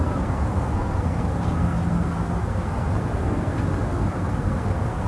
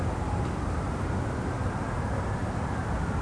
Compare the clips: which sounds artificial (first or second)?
first